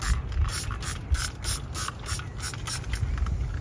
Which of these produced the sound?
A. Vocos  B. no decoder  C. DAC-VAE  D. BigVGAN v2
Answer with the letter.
B